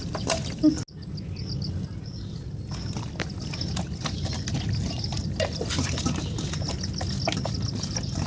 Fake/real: real